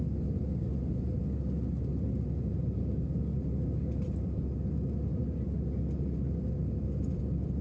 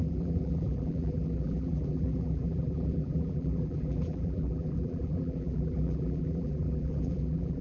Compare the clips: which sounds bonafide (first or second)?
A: first